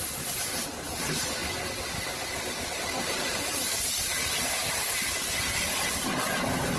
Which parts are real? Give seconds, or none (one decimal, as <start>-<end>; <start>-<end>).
0.0-6.8